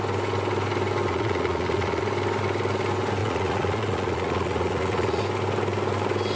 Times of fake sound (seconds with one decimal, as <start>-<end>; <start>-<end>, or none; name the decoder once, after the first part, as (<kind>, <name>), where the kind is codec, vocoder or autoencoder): 1.1-2.0 (vocoder, Vocos); 3.2-5.2